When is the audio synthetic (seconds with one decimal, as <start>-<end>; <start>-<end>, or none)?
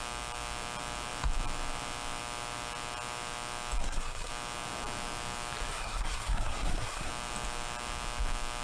3.8-4.3; 5.7-7.1